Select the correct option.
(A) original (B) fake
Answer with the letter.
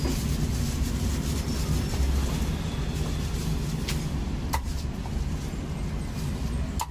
A